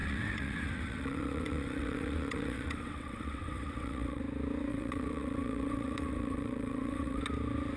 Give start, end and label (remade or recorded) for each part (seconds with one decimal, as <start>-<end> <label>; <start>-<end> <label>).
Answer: 0.0-4.2 remade; 4.2-4.7 recorded; 4.7-7.2 remade; 7.2-7.8 recorded